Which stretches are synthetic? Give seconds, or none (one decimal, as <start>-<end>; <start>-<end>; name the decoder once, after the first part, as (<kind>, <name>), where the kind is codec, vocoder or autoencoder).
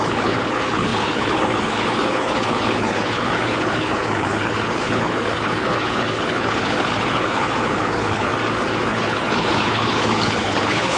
0.0-8.3 (codec, HILCodec); 8.9-11.0